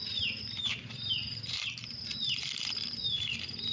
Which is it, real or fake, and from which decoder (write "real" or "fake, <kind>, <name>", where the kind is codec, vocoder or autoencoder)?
fake, vocoder, BigVGAN v2